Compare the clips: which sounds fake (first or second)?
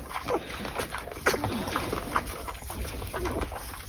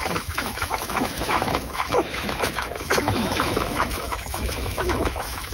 second